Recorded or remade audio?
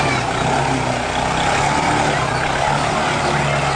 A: recorded